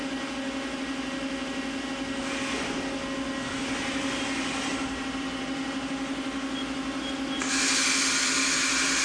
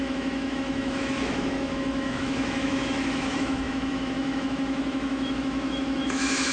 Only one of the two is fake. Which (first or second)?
second